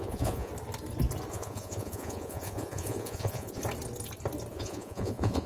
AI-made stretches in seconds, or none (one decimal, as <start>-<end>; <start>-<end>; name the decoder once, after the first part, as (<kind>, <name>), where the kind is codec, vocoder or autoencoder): 0.0-0.5 (vocoder, Vocos); 1.3-3.6; 4.5-5.5